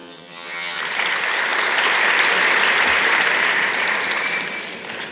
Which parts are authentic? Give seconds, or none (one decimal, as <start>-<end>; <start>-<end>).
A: 0.8-5.1